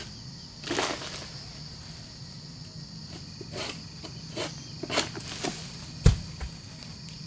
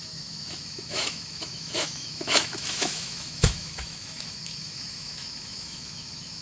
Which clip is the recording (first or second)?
first